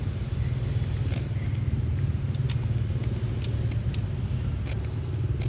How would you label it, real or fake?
real